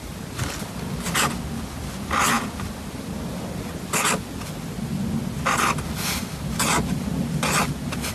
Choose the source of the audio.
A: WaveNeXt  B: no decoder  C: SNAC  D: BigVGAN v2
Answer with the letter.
B